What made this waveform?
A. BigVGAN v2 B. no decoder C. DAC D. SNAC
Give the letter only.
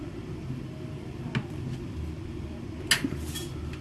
B